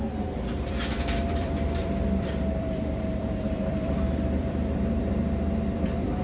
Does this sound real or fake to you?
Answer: fake